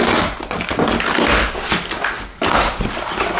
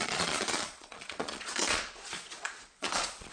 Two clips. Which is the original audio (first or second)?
first